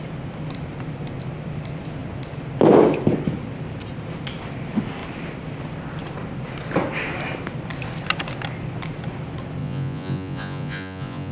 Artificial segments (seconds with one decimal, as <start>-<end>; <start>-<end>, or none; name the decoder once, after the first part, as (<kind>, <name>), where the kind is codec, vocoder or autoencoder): 9.6-11.3 (vocoder, Vocos)